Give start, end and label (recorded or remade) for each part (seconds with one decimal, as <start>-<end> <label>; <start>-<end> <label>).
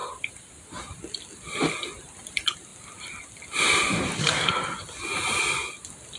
0.0-1.2 remade; 1.2-2.7 recorded; 2.7-4.5 remade; 4.5-6.2 recorded